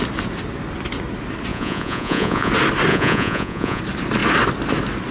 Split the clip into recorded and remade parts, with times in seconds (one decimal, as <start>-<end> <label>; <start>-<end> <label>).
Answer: 0.0-1.5 recorded; 1.5-2.5 remade; 2.5-2.9 recorded; 2.9-3.8 remade; 3.8-5.1 recorded